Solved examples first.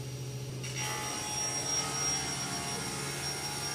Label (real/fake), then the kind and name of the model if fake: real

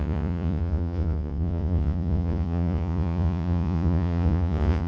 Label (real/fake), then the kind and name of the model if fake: fake, vocoder, Vocos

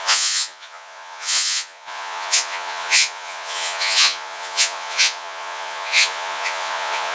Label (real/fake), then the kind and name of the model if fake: fake, vocoder, Vocos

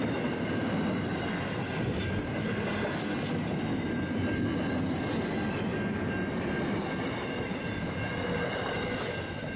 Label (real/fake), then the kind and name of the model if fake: real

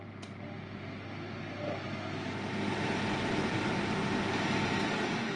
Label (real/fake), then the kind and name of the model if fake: real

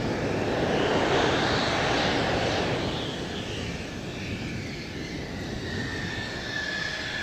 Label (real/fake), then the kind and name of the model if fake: real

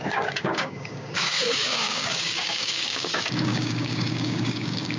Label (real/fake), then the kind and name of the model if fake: fake, codec, DAC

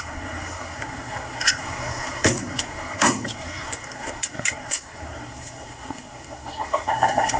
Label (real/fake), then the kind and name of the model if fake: fake, codec, SNAC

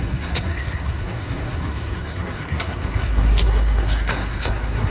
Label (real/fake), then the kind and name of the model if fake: fake, codec, SNAC